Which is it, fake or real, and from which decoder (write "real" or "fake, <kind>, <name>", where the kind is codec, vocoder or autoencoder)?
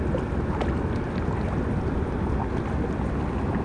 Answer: real